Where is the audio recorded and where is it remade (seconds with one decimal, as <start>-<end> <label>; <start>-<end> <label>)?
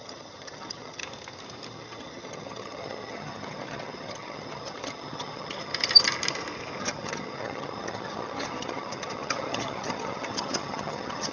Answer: 0.0-1.0 remade; 1.0-1.7 recorded; 1.7-5.7 remade; 5.7-6.8 recorded; 6.8-11.3 remade